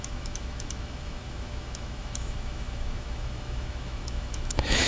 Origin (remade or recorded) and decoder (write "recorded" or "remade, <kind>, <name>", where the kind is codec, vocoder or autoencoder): remade, autoencoder, DAC-VAE